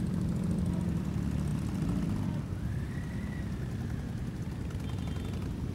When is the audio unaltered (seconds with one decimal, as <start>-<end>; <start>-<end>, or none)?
0.0-5.7